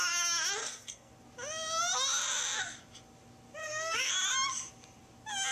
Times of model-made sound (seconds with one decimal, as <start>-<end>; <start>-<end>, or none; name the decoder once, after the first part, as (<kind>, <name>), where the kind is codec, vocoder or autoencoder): 0.6-1.1 (codec, SNAC); 3.6-4.1